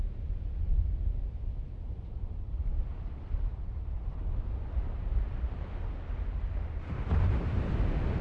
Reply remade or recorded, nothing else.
recorded